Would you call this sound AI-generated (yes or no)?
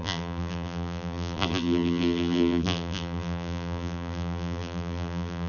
yes